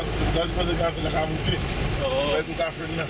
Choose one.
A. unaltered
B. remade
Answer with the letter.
A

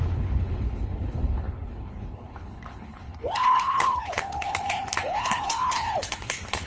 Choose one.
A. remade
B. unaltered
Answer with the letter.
A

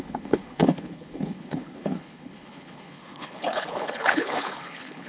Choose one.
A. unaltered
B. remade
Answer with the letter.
B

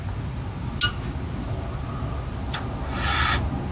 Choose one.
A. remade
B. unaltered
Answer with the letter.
B